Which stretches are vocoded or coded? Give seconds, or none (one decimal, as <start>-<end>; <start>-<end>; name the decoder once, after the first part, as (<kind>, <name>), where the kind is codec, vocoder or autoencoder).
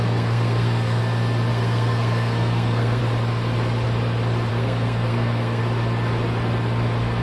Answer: 0.0-1.0 (codec, SNAC); 1.5-3.0; 4.5-5.6